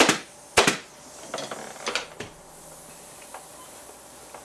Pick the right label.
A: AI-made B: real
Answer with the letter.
B